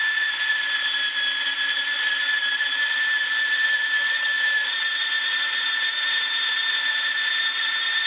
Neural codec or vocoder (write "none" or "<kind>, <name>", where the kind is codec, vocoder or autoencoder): none